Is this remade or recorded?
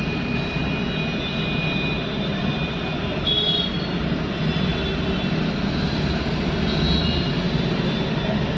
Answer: recorded